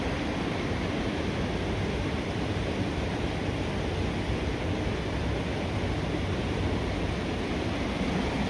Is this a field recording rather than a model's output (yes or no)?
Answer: yes